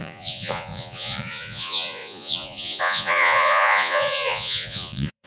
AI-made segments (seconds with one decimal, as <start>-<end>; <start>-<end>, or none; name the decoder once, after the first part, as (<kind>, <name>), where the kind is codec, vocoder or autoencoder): 0.0-5.3 (vocoder, Vocos)